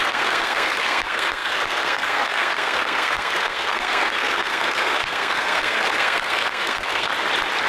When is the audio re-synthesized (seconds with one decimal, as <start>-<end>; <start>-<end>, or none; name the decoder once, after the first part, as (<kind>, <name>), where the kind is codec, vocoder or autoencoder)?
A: 0.0-7.1 (codec, SNAC)